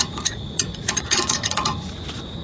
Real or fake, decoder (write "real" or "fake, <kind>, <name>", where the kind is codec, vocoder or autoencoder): fake, vocoder, Vocos